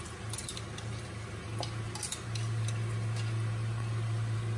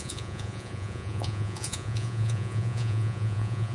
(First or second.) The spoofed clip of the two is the second